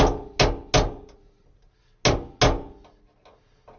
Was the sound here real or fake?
real